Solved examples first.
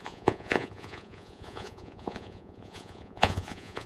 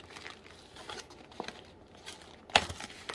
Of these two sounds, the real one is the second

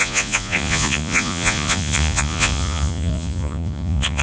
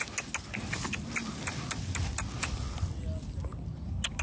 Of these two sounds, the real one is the second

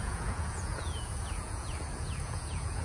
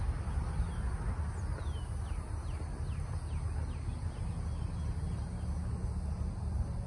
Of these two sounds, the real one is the second